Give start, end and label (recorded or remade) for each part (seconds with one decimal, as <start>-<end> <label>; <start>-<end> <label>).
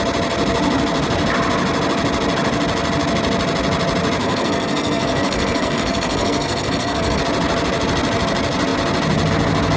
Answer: 0.0-4.2 recorded; 4.2-7.2 remade; 7.2-9.8 recorded